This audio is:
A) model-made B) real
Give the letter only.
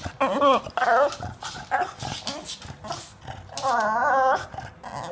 B